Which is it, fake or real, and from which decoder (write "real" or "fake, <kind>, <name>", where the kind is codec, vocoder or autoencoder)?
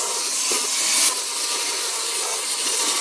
fake, vocoder, BigVGAN v2